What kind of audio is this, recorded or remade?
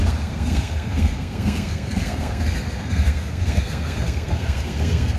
remade